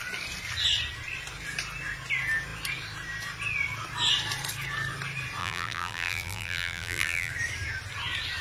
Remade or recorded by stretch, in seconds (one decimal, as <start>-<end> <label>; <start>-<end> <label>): 0.0-5.4 recorded; 5.4-7.3 remade; 7.3-8.4 recorded

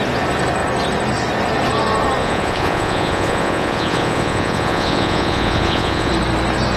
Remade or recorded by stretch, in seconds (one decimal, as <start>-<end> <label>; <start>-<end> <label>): 0.0-2.2 recorded; 2.2-6.1 remade; 6.1-6.8 recorded

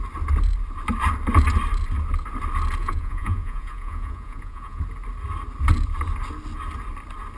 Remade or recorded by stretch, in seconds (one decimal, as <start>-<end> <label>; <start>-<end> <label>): 0.0-2.8 recorded; 2.8-4.8 remade; 4.8-7.4 recorded

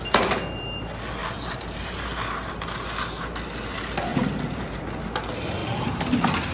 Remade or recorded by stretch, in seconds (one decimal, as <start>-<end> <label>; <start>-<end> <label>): 0.0-1.2 recorded; 1.2-2.5 remade; 2.5-4.1 recorded; 4.1-4.8 remade; 4.8-5.6 recorded; 5.6-6.5 remade

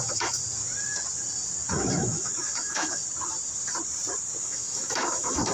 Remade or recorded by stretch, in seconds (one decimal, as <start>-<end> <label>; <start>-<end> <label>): 0.0-0.4 remade; 0.4-1.7 recorded; 1.7-3.0 remade; 3.0-4.4 recorded; 4.4-5.5 remade